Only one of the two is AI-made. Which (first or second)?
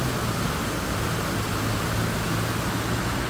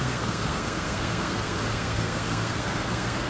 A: second